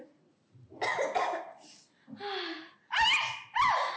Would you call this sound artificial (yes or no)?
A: no